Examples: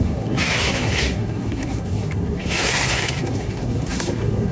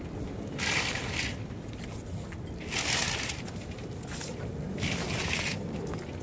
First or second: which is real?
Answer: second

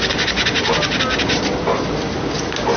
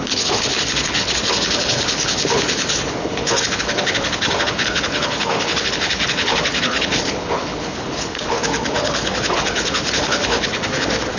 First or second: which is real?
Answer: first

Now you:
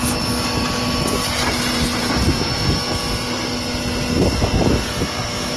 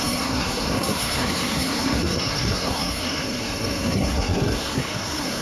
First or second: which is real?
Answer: first